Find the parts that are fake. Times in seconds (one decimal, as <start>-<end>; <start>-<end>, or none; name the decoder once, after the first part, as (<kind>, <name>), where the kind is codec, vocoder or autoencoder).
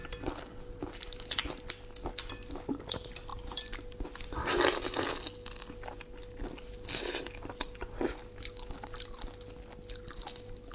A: 0.0-1.4 (vocoder, BigVGAN v2)